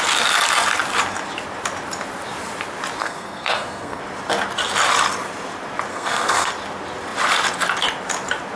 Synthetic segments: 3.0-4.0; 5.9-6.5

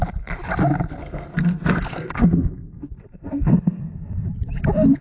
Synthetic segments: 1.0-3.8

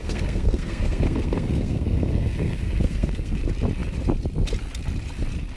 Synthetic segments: 0.0-3.4

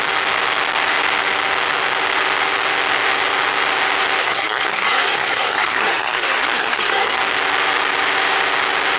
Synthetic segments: 4.2-7.2

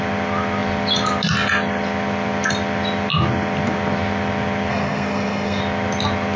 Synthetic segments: 4.7-5.6